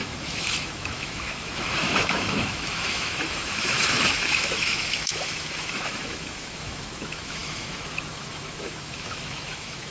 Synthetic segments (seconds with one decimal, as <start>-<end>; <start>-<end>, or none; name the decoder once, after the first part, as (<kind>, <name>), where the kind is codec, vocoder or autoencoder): 0.0-9.9 (autoencoder, DAC-VAE)